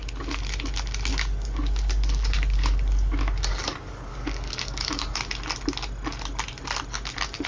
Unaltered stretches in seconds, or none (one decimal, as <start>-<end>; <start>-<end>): 0.0-1.1; 5.2-7.5

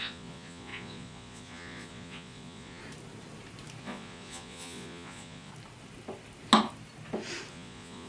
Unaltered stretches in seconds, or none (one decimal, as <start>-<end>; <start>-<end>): 2.8-3.8; 5.5-7.5

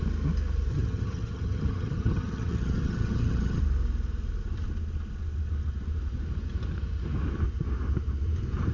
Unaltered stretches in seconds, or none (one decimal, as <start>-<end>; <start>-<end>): 0.0-0.7; 3.6-8.7

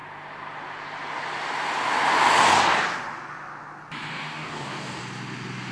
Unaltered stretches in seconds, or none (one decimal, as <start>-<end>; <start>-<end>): 0.0-4.1; 5.0-5.7

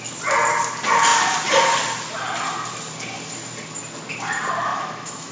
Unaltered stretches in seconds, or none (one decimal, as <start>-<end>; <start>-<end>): 0.0-4.7

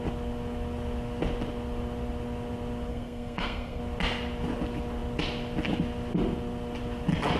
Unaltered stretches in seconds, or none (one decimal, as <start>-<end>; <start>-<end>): 0.0-2.9; 3.8-7.4

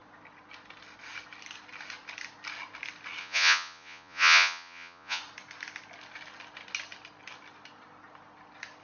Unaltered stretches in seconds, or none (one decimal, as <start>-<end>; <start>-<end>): 0.0-3.2; 5.2-8.8